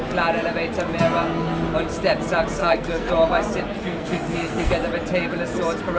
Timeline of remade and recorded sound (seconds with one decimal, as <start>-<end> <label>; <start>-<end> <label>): 0.0-2.6 recorded; 2.6-3.1 remade; 3.1-3.8 recorded; 3.8-4.7 remade; 4.7-6.0 recorded